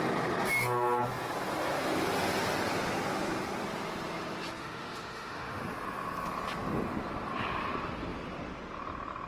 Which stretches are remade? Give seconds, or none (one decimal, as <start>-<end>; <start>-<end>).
4.6-5.6